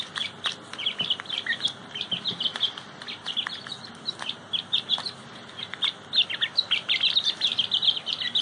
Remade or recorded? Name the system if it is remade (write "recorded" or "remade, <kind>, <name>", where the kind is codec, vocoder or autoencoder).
remade, vocoder, BigVGAN v2